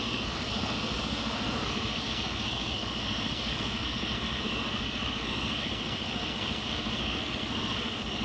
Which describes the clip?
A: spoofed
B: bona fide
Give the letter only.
A